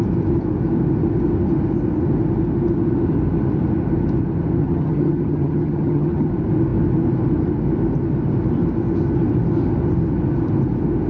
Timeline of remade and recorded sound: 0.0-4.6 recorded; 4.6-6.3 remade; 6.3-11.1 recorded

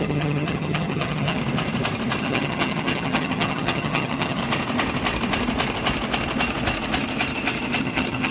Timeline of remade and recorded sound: 0.0-1.4 remade; 1.4-2.2 recorded; 2.2-4.4 remade; 4.4-7.8 recorded; 7.8-8.3 remade

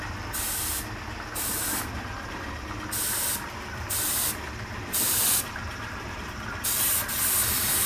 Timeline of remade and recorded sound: 0.0-3.2 recorded; 3.2-7.1 remade; 7.1-7.9 recorded